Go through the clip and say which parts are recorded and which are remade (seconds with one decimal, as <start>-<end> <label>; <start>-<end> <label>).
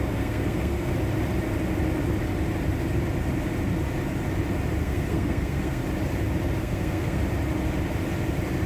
0.0-0.9 remade; 0.9-4.8 recorded; 4.8-5.8 remade; 5.8-6.6 recorded; 6.6-7.2 remade; 7.2-8.7 recorded